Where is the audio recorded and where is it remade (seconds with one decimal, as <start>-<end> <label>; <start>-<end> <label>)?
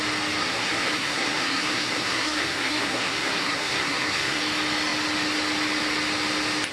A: 0.0-0.4 recorded; 0.4-4.4 remade; 4.4-6.7 recorded